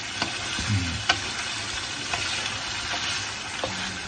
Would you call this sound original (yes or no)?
yes